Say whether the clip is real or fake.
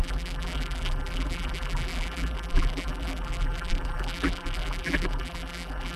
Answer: fake